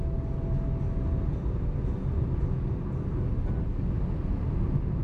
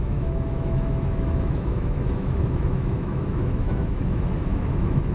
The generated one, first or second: second